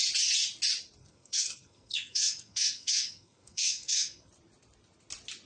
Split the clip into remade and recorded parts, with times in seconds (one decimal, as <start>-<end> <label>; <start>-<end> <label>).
0.0-1.0 recorded; 1.0-4.3 remade; 4.3-5.5 recorded